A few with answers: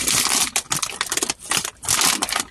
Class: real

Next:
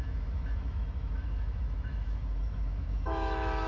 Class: fake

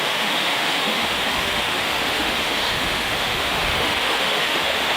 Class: fake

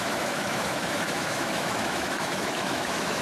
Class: fake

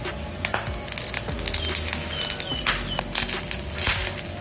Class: real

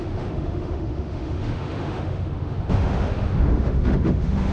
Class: fake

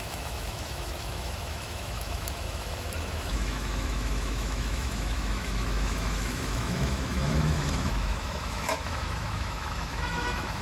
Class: fake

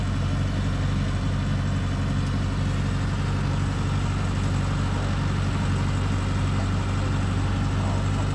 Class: real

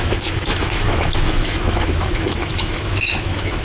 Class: fake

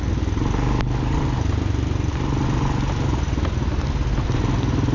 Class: real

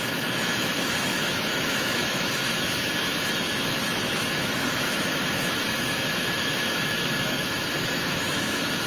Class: fake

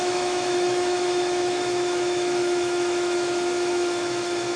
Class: fake